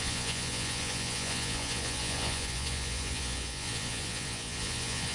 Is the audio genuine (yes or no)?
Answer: no